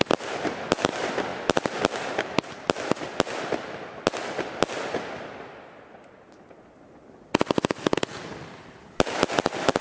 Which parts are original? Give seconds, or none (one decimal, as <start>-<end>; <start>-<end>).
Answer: 0.0-9.8